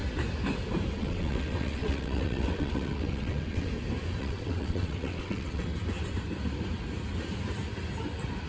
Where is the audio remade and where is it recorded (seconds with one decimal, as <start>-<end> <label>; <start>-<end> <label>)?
0.0-1.0 recorded; 1.0-3.7 remade; 3.7-4.2 recorded; 4.2-5.7 remade; 5.7-8.5 recorded